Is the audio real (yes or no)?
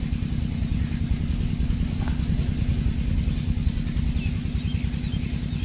yes